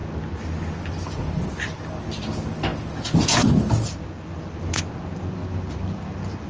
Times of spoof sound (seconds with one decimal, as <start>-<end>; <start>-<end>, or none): none